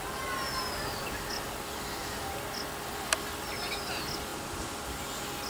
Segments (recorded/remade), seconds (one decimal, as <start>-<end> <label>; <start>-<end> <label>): 0.0-5.5 recorded